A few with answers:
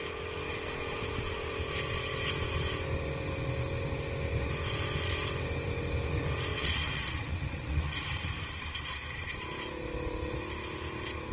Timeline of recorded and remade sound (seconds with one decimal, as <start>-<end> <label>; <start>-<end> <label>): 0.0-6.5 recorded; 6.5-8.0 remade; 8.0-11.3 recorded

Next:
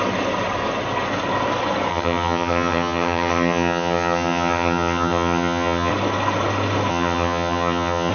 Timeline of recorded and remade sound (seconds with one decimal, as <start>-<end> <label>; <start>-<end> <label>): 0.0-1.9 recorded; 1.9-5.9 remade; 5.9-6.9 recorded; 6.9-8.1 remade

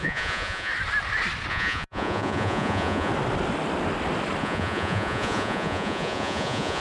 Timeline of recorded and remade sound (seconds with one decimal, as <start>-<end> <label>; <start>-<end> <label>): 0.0-0.7 remade; 0.7-1.5 recorded; 1.5-3.1 remade; 3.1-4.4 recorded; 4.4-6.8 remade

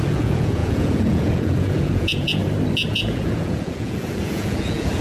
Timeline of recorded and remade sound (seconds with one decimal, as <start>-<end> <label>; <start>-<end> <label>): 0.0-2.4 remade; 2.4-2.9 recorded; 2.9-5.0 remade